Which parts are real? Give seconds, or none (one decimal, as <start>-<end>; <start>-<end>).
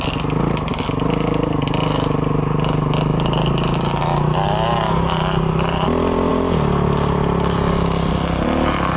0.0-9.0